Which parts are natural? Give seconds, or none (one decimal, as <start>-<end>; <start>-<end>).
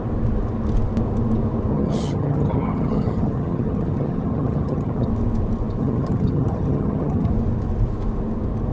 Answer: 0.0-1.7; 5.1-5.8; 7.3-8.7